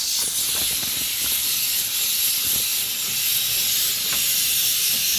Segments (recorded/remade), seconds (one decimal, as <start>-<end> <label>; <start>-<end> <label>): 0.0-5.2 recorded